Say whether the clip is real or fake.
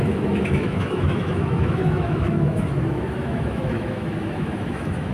fake